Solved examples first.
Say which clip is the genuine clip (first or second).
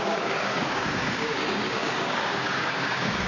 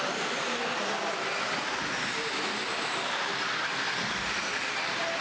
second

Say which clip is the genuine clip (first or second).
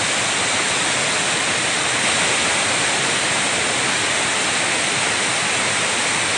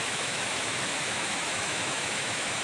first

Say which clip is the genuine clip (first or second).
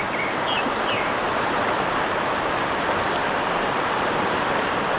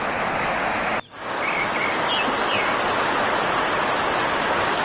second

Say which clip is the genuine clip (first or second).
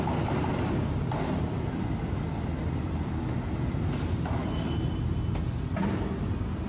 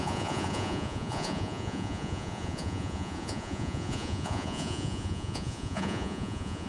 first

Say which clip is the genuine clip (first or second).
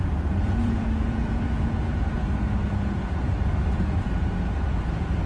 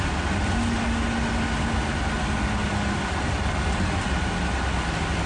second